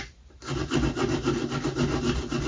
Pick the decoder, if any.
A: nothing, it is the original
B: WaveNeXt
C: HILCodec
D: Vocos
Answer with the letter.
A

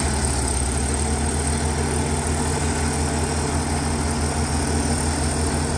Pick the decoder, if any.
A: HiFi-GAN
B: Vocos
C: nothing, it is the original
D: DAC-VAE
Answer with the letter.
C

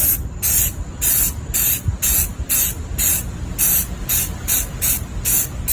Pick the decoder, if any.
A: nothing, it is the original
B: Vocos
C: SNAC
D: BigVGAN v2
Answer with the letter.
A